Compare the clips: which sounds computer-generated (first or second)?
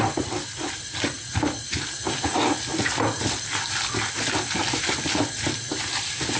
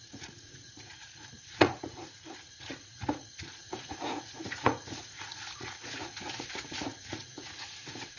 second